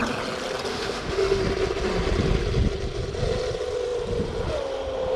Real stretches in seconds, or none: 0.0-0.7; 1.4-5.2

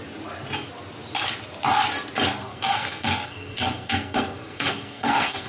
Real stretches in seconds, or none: 0.0-2.4

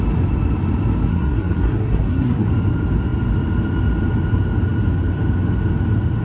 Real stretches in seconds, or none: 0.0-1.1; 2.5-6.2

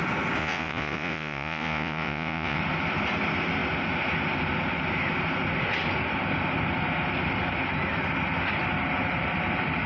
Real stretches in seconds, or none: 0.0-0.4; 2.6-9.9